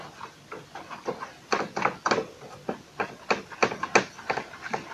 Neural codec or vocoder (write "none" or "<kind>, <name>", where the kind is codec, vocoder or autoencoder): none